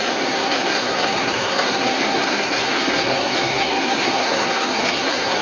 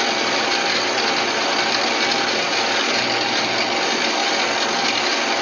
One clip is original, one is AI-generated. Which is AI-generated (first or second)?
first